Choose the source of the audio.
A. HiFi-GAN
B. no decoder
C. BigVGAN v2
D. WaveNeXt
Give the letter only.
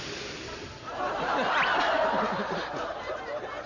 B